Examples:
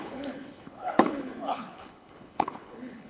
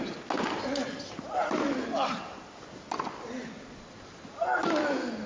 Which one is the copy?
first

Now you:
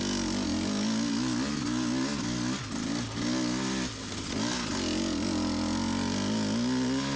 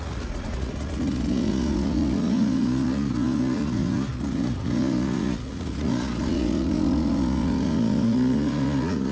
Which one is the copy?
second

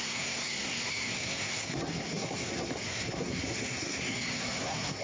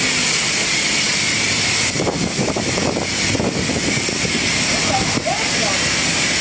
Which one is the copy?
first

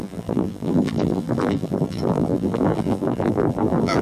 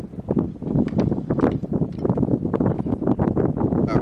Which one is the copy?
first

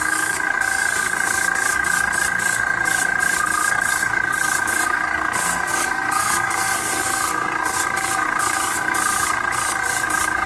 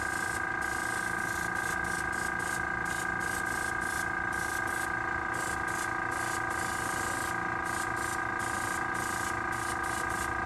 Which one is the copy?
first